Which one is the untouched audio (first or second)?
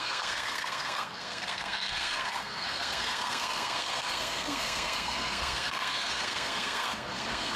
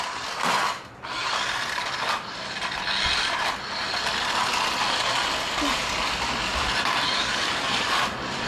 second